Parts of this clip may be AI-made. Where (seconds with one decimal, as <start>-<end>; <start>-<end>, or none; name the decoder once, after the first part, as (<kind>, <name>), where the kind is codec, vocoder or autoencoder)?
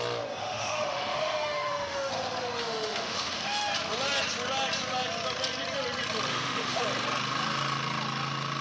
0.4-2.1 (autoencoder, DAC-VAE); 2.6-3.7; 6.3-6.8